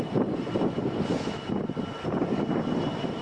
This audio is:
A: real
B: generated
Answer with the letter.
A